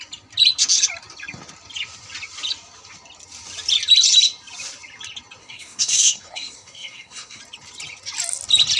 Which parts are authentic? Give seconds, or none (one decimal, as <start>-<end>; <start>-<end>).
0.0-5.4; 7.4-8.8